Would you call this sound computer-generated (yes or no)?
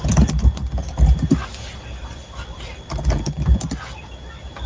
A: no